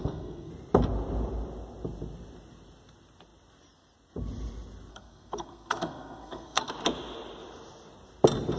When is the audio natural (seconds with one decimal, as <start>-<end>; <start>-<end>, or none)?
0.5-4.9; 6.7-8.6